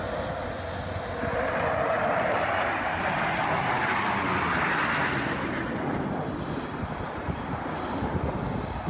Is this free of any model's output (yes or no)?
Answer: yes